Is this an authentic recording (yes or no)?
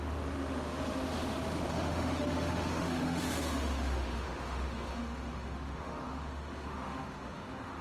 no